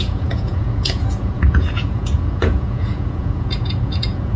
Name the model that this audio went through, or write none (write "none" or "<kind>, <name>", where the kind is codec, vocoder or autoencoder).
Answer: vocoder, Vocos